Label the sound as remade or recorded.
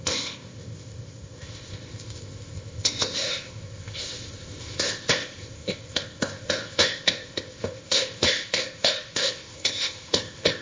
remade